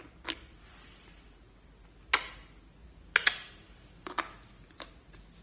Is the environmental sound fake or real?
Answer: real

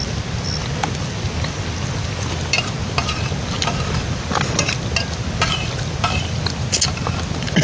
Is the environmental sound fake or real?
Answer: real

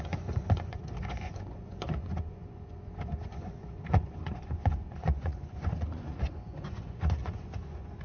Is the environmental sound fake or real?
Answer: fake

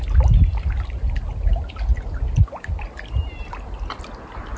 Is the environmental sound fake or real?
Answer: real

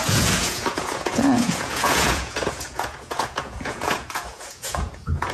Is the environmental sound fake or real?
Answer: fake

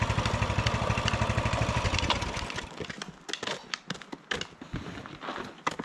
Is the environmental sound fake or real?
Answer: real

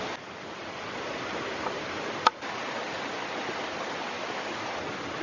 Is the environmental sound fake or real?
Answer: real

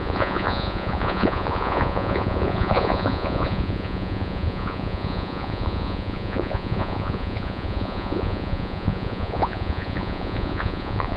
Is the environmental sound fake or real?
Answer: fake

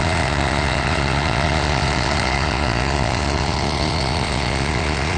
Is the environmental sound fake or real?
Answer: fake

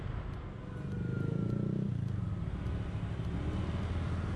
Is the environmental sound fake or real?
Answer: real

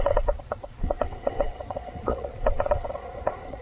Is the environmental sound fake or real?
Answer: fake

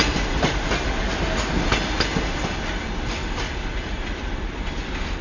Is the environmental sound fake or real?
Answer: real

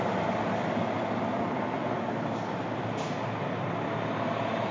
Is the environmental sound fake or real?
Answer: real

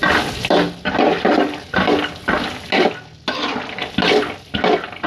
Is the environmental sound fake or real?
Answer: real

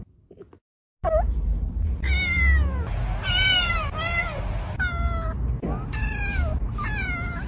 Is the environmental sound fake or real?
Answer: real